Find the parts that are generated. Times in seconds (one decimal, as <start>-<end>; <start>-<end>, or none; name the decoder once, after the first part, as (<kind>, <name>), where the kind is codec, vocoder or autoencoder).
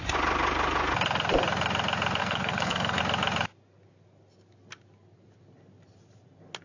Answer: 2.2-3.0 (codec, SNAC)